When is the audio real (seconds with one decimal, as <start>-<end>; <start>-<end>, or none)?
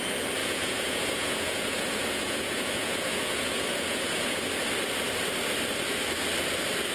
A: 0.0-0.4; 4.5-6.9